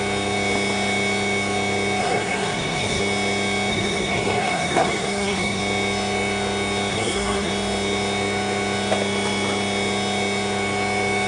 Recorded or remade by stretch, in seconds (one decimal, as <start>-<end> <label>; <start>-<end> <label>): 0.0-2.0 recorded; 2.0-3.0 remade; 3.0-3.7 recorded; 3.7-5.6 remade; 5.6-6.9 recorded; 6.9-7.5 remade; 7.5-11.3 recorded